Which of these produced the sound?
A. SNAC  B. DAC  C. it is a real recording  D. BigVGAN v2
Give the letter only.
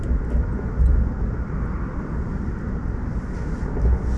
C